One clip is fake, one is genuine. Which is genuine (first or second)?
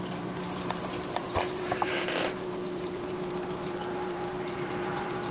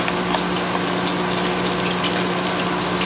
second